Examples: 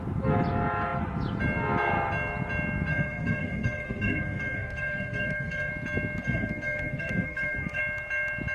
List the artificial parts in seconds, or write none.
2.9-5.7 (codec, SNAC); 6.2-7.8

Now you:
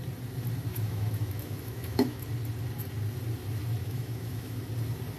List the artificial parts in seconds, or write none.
0.7-2.3 (autoencoder, DAC-VAE); 3.8-4.6

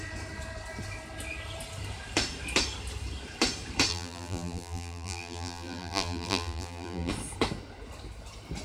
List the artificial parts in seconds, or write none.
3.9-7.1 (vocoder, BigVGAN v2)

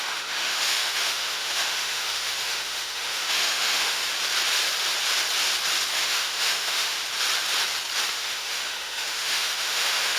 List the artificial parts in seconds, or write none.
0.0-4.0 (autoencoder, DAC-VAE); 5.9-7.0; 8.1-10.2

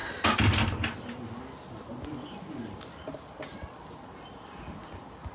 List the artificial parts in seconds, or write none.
none